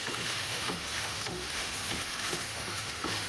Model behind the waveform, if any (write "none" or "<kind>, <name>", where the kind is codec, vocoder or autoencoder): autoencoder, DAC-VAE